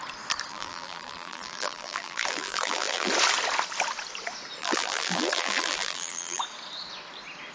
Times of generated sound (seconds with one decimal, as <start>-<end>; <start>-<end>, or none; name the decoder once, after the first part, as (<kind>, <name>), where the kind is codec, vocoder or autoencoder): 0.5-3.1 (vocoder, BigVGAN v2); 4.6-6.4

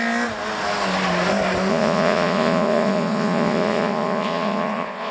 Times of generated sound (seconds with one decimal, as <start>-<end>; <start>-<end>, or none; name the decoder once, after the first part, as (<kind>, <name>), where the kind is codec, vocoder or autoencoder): 1.7-5.1 (vocoder, Vocos)

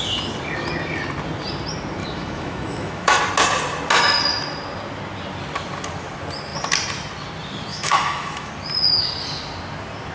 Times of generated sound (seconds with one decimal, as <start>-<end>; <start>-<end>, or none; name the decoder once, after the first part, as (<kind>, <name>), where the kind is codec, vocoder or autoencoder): 2.0-3.2 (autoencoder, DAC-VAE); 7.7-8.5

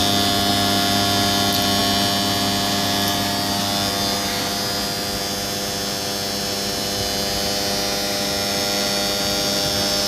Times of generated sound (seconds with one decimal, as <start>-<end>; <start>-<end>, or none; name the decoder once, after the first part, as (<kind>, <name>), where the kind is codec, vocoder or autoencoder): none